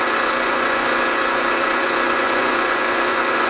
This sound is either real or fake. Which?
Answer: fake